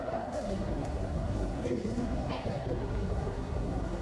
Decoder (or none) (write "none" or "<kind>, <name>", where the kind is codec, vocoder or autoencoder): codec, SNAC